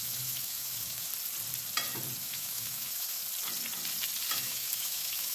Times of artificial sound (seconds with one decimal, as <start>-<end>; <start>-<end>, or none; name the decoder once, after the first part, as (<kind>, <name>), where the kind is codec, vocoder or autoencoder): 0.0-1.1 (autoencoder, DAC-VAE); 2.2-3.2; 4.4-5.3